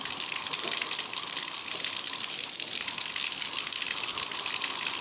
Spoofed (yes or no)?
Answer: no